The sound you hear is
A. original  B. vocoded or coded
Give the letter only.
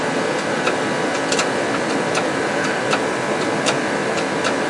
A